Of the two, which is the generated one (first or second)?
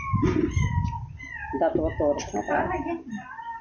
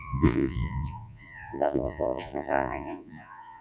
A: second